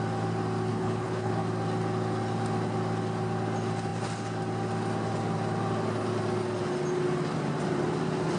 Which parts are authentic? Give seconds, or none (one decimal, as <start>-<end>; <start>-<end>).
0.0-0.7; 1.3-8.4